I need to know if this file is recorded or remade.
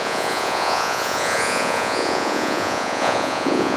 remade